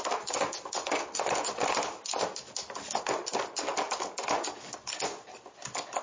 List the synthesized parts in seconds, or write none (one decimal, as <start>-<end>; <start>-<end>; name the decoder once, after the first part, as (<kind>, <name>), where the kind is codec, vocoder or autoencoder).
1.6-2.3 (vocoder, BigVGAN v2)